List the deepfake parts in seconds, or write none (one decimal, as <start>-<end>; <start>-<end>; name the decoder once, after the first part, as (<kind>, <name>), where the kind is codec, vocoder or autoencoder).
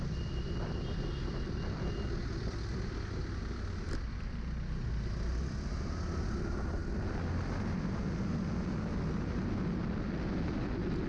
none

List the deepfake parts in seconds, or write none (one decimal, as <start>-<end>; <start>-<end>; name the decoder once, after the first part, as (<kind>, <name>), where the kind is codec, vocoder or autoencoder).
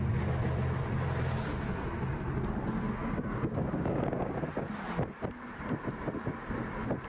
3.0-4.4 (codec, DAC)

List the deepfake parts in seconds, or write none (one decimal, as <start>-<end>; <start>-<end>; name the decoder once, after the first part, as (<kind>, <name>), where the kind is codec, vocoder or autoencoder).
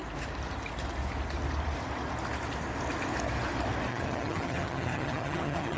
3.9-5.8 (vocoder, HiFi-GAN)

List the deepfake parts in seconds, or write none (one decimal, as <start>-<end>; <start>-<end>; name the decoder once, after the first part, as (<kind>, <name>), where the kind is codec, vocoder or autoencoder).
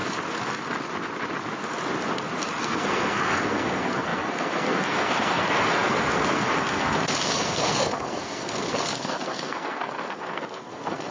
2.6-11.1 (codec, SNAC)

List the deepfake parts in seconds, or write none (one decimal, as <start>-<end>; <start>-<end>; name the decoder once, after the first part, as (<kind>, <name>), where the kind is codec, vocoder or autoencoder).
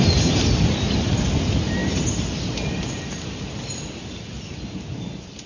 none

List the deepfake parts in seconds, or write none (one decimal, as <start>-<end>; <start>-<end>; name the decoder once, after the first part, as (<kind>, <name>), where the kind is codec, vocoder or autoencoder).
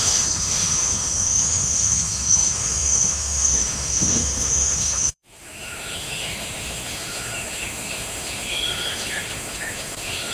0.0-10.3 (autoencoder, DAC-VAE)